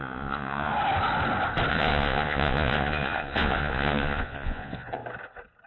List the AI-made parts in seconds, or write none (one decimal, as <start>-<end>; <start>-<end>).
0.0-0.7; 1.7-5.0